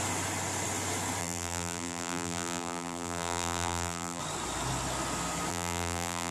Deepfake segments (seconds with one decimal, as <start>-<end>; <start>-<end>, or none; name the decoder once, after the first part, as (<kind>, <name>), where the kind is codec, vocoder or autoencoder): 1.2-4.2 (vocoder, BigVGAN v2); 5.5-6.3